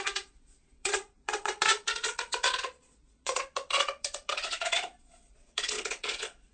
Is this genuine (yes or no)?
no